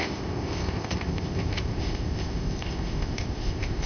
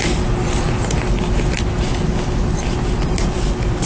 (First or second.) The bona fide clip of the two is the second